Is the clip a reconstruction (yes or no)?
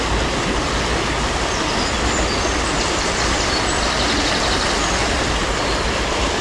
no